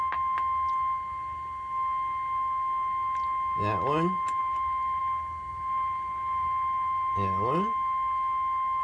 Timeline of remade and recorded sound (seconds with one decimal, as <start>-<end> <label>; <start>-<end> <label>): 0.0-4.4 recorded; 4.4-5.0 remade; 5.0-5.5 recorded; 5.5-7.1 remade; 7.1-8.8 recorded